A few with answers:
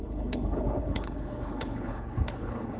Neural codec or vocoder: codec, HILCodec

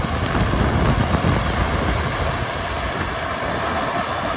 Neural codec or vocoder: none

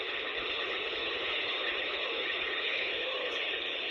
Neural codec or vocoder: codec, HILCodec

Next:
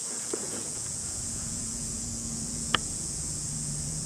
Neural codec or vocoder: vocoder, Vocos